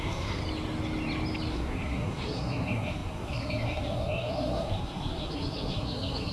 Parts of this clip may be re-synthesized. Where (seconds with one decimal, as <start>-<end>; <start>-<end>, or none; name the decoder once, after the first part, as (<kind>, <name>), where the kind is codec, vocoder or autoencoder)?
0.0-0.4 (codec, SNAC); 1.5-6.3